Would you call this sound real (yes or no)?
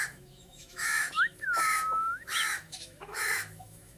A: no